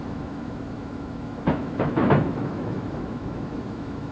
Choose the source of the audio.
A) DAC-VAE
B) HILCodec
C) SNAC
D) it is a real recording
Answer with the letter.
A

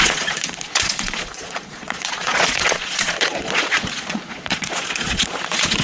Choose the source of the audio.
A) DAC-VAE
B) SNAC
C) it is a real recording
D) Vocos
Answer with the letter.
D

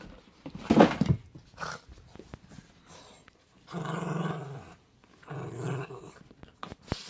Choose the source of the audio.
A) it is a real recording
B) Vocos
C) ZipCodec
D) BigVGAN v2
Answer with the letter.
A